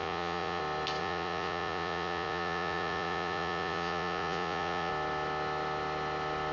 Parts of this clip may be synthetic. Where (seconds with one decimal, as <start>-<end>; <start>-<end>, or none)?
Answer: 0.0-0.6; 1.0-4.9